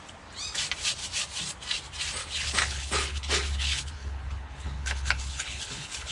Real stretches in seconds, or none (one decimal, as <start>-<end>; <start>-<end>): 0.0-2.2